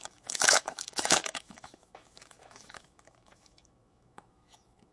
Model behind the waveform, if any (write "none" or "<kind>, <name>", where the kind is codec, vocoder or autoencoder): autoencoder, DAC-VAE